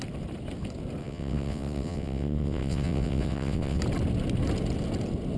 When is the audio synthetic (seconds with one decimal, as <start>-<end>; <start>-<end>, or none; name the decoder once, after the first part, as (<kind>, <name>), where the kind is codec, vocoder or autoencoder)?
1.0-3.8 (vocoder, WaveNeXt)